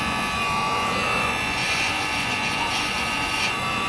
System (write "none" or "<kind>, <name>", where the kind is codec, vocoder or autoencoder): vocoder, Vocos